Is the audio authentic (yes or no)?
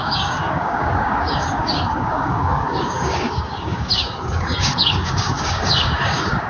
no